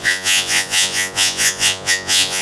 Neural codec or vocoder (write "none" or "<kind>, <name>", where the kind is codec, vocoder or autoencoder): vocoder, Vocos